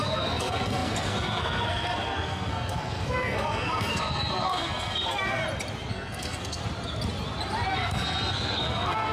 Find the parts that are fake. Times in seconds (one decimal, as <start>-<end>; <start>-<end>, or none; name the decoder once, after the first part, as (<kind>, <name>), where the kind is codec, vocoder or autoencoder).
0.0-5.4 (codec, SNAC); 5.9-6.6; 7.7-9.1